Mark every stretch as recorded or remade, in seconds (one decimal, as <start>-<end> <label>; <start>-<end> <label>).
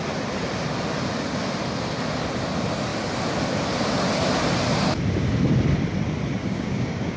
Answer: 0.0-6.4 recorded; 6.4-7.2 remade